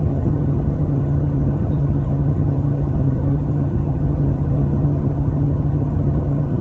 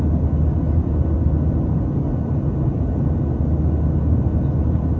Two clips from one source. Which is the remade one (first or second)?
first